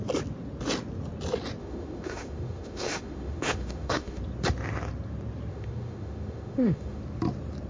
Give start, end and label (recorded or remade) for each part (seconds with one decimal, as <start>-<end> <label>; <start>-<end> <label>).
0.0-1.6 recorded; 1.6-4.2 remade; 4.2-5.5 recorded; 5.5-7.0 remade; 7.0-7.7 recorded